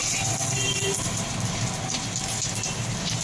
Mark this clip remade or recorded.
remade